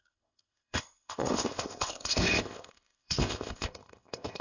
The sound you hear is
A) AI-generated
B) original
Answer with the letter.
A